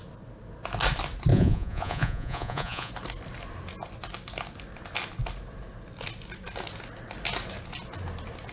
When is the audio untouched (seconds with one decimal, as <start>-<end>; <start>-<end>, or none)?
0.0-1.3; 2.9-8.5